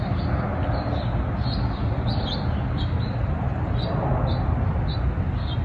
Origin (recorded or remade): recorded